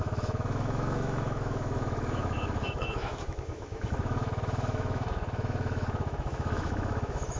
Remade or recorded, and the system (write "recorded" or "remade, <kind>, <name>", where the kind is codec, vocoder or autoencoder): remade, autoencoder, DAC-VAE